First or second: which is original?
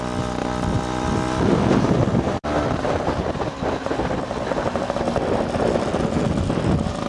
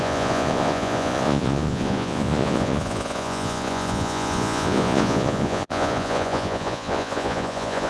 first